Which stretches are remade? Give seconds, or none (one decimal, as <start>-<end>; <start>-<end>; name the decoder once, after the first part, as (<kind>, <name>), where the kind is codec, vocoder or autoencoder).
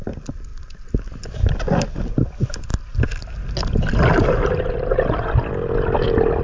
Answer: none